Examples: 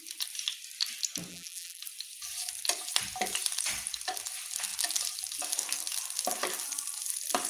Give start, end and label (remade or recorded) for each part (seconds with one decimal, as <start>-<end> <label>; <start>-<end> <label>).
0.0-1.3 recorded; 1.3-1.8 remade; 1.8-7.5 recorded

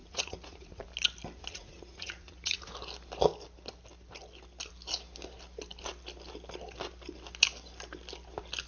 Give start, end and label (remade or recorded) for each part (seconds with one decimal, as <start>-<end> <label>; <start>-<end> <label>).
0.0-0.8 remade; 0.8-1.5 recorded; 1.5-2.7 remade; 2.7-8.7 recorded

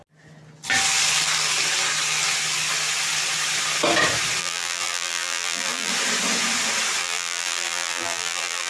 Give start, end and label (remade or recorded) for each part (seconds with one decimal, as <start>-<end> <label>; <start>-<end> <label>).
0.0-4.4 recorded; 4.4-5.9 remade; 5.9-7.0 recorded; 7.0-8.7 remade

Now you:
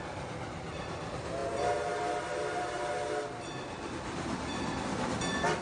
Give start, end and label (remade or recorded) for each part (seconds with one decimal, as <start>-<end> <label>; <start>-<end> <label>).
0.0-5.6 recorded

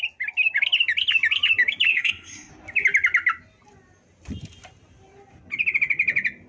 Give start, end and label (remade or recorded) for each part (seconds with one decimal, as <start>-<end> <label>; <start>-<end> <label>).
0.0-1.9 recorded; 1.9-2.5 remade; 2.5-6.5 recorded

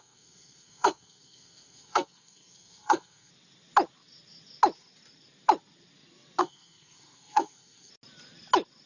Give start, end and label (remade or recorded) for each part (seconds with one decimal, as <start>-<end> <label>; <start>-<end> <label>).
0.0-3.3 remade; 3.3-6.4 recorded; 6.4-7.9 remade; 7.9-8.9 recorded